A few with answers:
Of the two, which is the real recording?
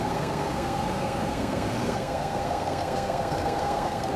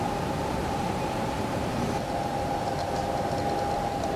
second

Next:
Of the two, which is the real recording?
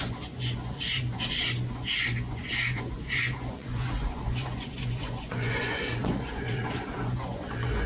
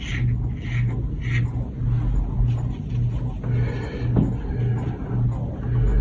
second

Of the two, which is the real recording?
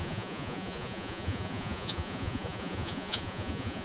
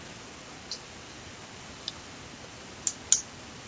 second